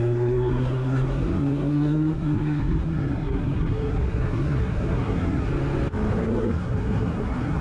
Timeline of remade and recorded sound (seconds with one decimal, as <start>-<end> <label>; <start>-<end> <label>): 0.0-5.5 remade; 5.5-6.1 recorded; 6.1-7.6 remade